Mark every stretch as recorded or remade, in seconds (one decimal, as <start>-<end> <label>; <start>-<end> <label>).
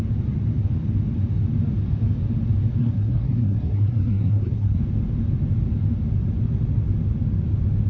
0.0-2.8 recorded; 2.8-4.8 remade; 4.8-7.9 recorded